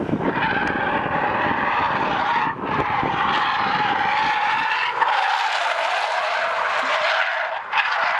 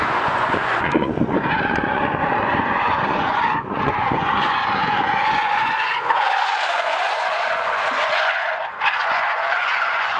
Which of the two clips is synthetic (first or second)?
second